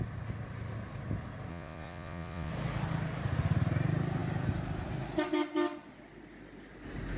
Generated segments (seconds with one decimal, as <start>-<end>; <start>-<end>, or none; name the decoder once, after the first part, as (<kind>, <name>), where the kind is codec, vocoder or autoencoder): 1.5-2.5 (vocoder, Vocos)